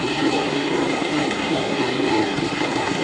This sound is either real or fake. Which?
fake